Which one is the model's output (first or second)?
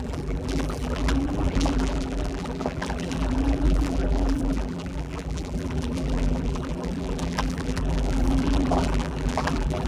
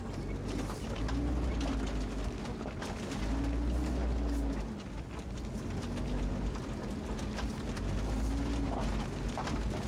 first